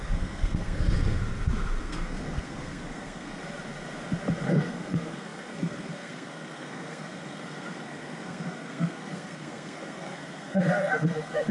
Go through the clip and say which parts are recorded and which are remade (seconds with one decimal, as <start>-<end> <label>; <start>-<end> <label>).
0.0-1.2 remade; 1.2-1.8 recorded; 1.8-3.4 remade; 3.4-4.5 recorded; 4.5-11.5 remade